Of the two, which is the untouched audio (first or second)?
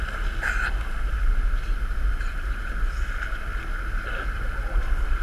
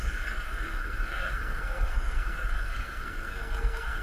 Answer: first